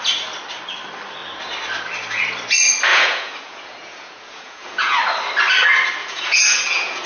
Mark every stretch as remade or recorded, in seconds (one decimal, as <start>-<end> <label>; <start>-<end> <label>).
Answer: 0.0-2.9 recorded; 2.9-5.0 remade; 5.0-6.0 recorded; 6.0-7.1 remade